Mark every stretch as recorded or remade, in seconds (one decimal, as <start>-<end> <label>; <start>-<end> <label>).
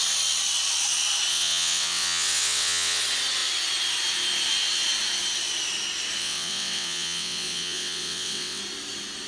0.0-1.3 recorded; 1.3-3.0 remade; 3.0-6.2 recorded; 6.2-8.6 remade; 8.6-9.3 recorded